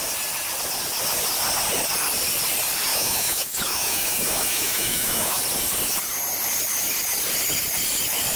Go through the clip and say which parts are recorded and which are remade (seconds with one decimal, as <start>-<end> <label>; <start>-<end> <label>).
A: 0.0-2.9 recorded; 2.9-5.4 remade; 5.4-8.4 recorded